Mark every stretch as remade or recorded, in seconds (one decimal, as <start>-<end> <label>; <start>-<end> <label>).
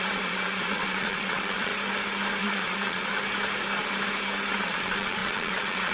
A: 0.0-1.7 remade; 1.7-2.4 recorded; 2.4-3.1 remade; 3.1-4.6 recorded; 4.6-5.9 remade